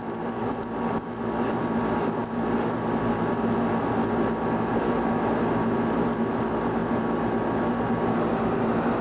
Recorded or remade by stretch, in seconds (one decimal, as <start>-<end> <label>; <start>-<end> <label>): 0.0-9.0 recorded